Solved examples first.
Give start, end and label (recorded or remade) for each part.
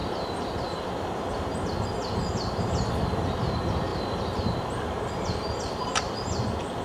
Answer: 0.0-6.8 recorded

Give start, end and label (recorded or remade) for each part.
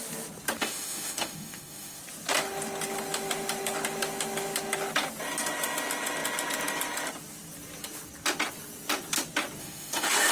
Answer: 0.0-0.6 recorded; 0.6-2.0 remade; 2.0-9.6 recorded; 9.6-10.3 remade